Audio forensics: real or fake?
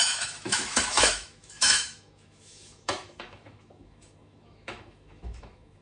fake